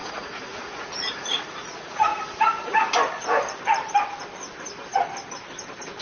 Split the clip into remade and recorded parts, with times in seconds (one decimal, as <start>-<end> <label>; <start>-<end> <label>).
0.0-2.1 remade; 2.1-6.0 recorded